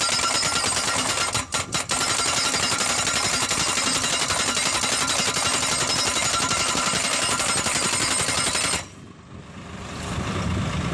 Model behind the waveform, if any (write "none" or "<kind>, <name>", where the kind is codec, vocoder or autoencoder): none